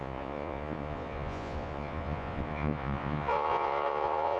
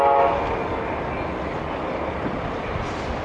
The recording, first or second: second